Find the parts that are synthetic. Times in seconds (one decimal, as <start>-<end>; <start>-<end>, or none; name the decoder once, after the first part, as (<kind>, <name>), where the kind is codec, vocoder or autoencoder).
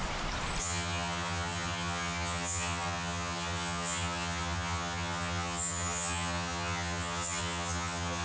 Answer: 0.6-8.2 (vocoder, HiFi-GAN)